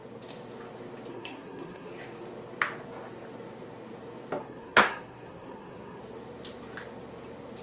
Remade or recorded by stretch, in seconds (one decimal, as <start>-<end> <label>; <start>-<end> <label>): 0.0-1.1 recorded; 1.1-1.9 remade; 1.9-4.4 recorded; 4.4-6.0 remade; 6.0-7.6 recorded